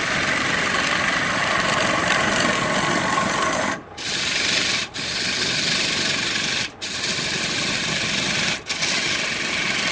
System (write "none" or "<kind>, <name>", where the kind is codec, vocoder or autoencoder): none